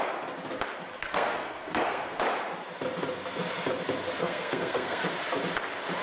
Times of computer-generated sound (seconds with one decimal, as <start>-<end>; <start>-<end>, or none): 0.9-2.2; 4.2-5.0